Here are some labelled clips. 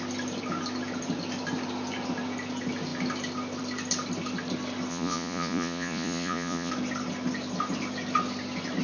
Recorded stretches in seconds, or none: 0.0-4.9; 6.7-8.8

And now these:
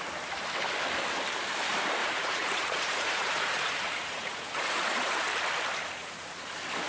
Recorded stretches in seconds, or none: 0.0-2.0; 5.1-6.0; 6.5-6.9

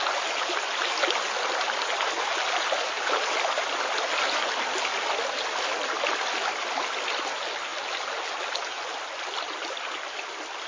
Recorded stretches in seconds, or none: 0.0-10.7

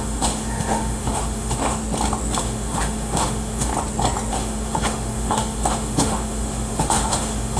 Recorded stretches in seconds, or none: 1.8-2.4; 3.7-4.3